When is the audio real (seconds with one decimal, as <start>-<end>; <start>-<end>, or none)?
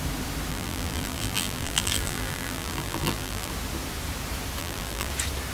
0.0-0.5; 3.5-4.6; 5.1-5.5